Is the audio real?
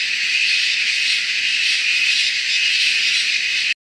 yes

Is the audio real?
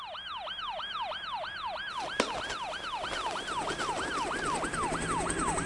yes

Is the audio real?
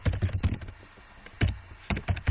no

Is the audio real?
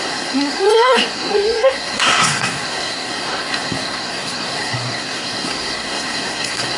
no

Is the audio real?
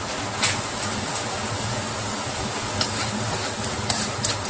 yes